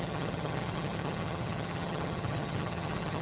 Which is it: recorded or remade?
remade